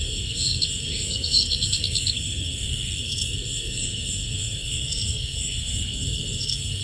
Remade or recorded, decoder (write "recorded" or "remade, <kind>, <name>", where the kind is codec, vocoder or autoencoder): remade, codec, SNAC